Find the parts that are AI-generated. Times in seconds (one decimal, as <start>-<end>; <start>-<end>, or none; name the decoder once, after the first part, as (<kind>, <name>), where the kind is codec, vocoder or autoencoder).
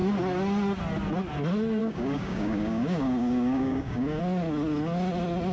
1.8-4.2 (codec, DAC)